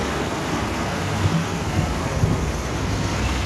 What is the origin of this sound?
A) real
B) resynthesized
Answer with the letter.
B